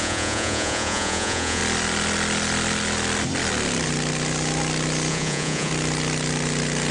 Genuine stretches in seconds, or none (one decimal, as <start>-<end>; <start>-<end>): 1.6-5.1; 5.7-6.9